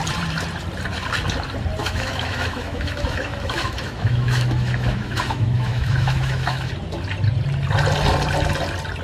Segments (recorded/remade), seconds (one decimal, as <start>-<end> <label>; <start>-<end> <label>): 0.0-1.8 recorded; 1.8-6.7 remade; 6.7-9.0 recorded